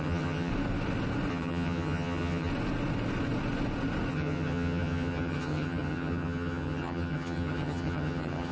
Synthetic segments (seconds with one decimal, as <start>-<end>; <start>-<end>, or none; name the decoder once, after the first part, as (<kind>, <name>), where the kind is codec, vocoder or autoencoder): 0.0-0.5 (vocoder, HiFi-GAN); 1.3-2.5; 4.1-8.5